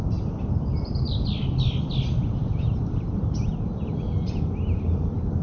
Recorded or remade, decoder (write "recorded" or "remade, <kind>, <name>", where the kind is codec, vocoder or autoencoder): recorded